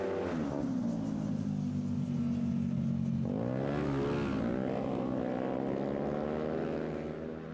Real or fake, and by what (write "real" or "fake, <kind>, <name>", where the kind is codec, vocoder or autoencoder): real